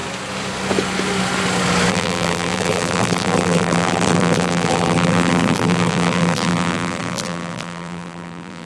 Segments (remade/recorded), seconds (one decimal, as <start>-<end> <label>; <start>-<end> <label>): 0.0-1.9 recorded; 1.9-8.6 remade